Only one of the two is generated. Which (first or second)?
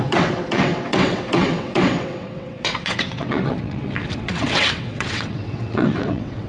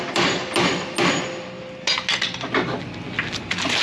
first